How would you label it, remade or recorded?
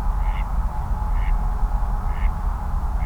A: recorded